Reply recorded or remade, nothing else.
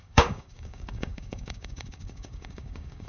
remade